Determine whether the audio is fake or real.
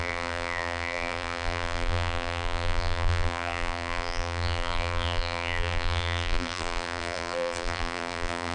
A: fake